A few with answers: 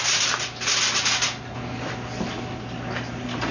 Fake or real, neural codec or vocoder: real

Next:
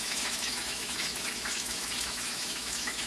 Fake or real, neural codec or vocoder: fake, autoencoder, DAC-VAE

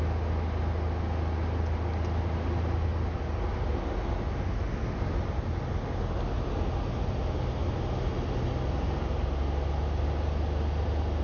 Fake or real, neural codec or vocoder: real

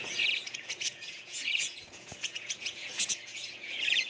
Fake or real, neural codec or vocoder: fake, vocoder, Vocos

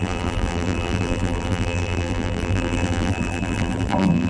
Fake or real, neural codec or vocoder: fake, vocoder, BigVGAN v2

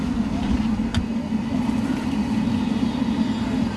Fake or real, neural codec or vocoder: real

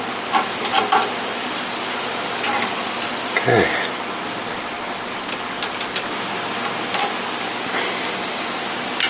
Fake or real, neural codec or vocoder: real